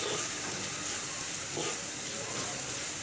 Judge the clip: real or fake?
real